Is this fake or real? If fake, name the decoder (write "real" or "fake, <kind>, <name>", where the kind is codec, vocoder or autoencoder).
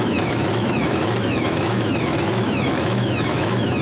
fake, autoencoder, DAC-VAE